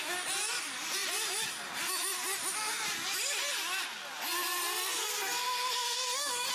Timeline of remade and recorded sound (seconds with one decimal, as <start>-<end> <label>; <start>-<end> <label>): 0.0-4.8 recorded; 4.8-6.5 remade